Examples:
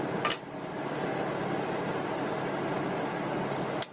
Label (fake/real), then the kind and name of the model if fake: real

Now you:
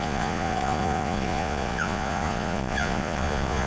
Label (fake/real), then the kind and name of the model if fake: fake, vocoder, Vocos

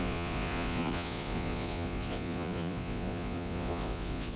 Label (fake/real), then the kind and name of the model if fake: fake, vocoder, Vocos